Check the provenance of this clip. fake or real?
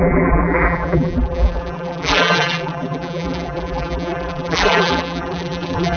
fake